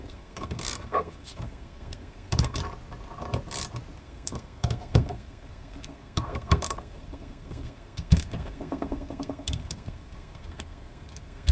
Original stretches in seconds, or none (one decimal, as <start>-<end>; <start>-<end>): 2.6-4.0